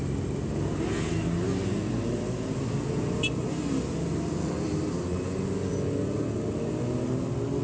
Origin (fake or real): real